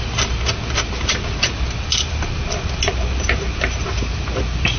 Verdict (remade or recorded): recorded